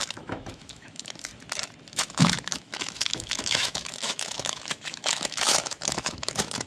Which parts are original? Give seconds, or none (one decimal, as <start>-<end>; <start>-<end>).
1.3-1.9